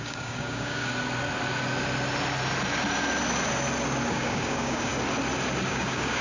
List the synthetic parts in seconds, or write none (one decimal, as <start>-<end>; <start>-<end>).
0.0-0.9; 4.1-4.9; 5.7-6.2